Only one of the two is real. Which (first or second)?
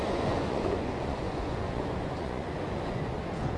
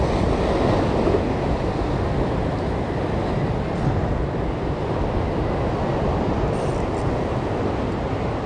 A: second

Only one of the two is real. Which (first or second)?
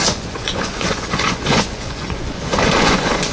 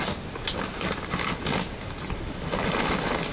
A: second